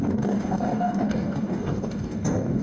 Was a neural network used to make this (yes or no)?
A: yes